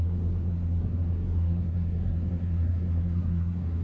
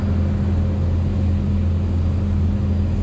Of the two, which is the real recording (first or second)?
second